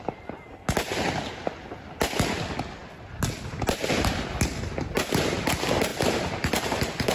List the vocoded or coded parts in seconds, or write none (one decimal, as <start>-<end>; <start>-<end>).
none